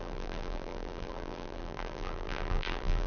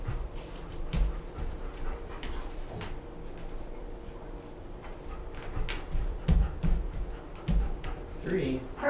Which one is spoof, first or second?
first